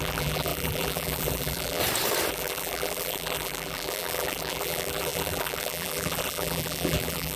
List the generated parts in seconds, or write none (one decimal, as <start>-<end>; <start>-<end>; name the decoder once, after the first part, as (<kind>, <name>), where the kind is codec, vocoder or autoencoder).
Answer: 0.0-1.8 (vocoder, BigVGAN v2); 2.3-7.4